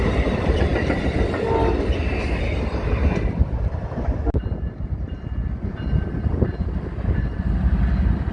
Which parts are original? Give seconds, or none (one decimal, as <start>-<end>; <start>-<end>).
0.0-8.3